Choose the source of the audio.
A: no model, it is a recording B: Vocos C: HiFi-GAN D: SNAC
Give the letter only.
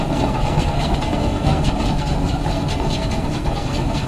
D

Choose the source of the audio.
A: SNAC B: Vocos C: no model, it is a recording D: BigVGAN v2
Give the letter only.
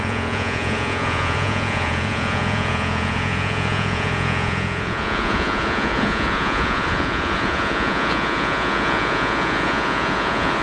B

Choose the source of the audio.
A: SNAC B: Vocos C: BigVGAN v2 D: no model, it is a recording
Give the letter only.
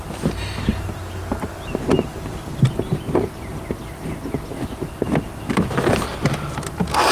D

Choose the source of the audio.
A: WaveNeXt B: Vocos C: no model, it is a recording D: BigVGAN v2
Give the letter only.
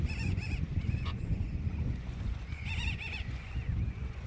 B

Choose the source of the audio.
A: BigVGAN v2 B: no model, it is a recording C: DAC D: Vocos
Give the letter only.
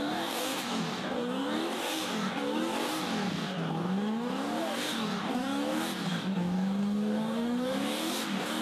C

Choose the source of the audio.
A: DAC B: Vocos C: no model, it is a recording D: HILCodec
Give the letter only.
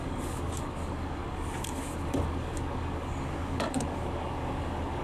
A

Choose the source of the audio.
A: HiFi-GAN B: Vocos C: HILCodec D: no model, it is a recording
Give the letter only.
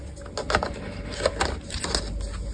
D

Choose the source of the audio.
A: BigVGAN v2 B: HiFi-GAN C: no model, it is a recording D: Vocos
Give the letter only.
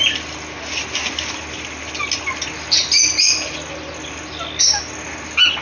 C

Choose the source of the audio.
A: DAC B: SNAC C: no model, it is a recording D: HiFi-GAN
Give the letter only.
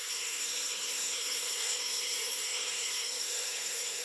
B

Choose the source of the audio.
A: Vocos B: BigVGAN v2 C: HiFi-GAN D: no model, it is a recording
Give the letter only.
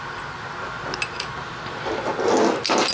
D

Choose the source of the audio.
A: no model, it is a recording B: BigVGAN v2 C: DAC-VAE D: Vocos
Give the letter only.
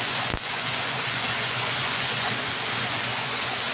D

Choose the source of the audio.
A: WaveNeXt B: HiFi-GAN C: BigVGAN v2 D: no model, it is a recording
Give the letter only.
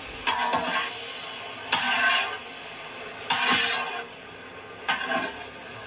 D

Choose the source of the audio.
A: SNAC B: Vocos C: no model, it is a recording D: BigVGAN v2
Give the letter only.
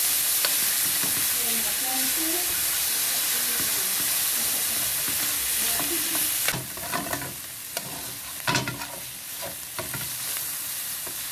C